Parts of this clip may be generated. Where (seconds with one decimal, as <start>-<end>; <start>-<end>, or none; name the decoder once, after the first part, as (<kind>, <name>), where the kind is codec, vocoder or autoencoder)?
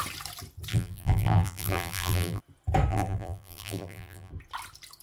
0.7-2.4 (vocoder, BigVGAN v2); 2.9-4.3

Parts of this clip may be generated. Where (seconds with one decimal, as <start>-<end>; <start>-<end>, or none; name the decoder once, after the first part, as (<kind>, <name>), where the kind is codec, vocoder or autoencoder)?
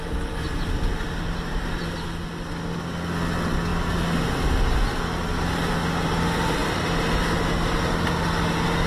6.6-7.2 (vocoder, BigVGAN v2)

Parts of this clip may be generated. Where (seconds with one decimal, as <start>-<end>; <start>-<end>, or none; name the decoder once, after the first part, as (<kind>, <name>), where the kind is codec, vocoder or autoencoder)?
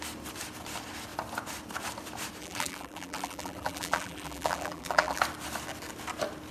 2.4-5.2 (vocoder, BigVGAN v2)